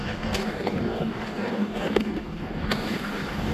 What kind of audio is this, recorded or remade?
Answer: remade